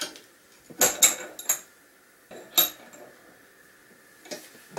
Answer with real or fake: real